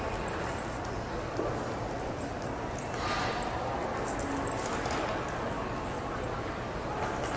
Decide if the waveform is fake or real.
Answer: real